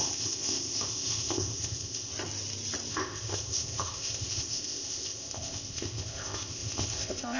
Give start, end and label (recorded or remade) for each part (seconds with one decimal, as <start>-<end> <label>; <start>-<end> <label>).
0.0-2.1 remade; 2.1-2.9 recorded; 2.9-7.4 remade